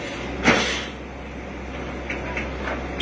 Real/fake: real